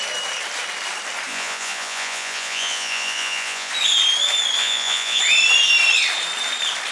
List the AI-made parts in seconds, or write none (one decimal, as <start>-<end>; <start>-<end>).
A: 1.3-3.7; 4.6-5.2